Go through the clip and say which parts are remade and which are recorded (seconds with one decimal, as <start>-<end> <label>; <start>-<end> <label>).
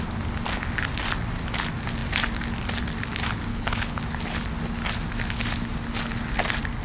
0.0-3.5 recorded; 3.5-4.0 remade; 4.0-6.8 recorded